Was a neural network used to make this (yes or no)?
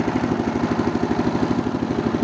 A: no